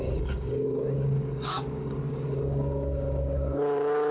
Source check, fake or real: fake